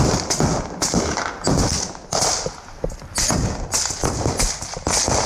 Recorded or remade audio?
recorded